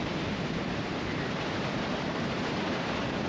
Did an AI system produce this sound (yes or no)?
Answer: yes